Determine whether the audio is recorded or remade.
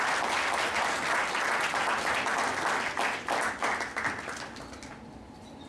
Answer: recorded